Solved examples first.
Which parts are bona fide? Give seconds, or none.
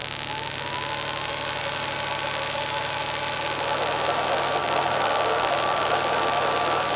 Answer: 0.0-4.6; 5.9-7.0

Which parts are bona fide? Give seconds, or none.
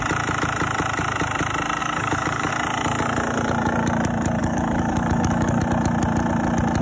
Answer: 0.0-1.8; 2.5-4.4; 5.6-6.8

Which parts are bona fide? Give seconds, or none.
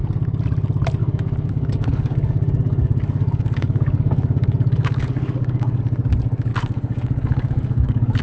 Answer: 0.0-1.0; 5.8-6.5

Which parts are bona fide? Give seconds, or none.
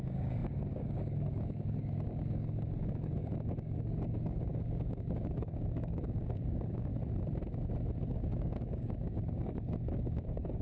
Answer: 6.9-8.1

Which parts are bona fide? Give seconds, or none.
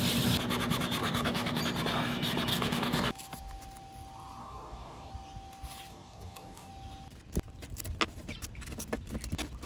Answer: 0.0-1.0; 1.6-2.5; 3.1-4.4; 5.1-5.9; 6.7-9.7